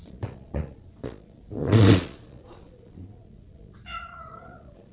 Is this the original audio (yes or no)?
no